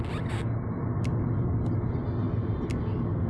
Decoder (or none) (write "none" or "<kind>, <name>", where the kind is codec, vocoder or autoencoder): none